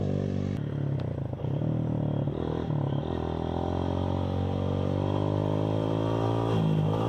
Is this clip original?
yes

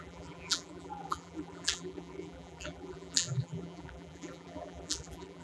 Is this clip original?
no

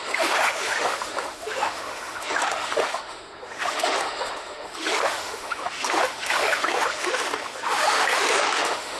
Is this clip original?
no